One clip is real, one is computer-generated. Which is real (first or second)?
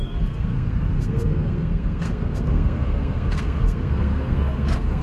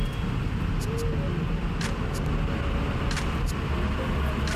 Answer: second